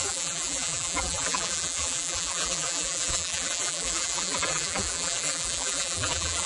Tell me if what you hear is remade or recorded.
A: remade